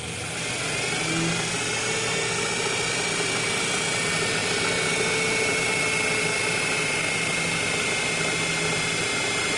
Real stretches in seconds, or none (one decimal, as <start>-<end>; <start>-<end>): 0.0-9.6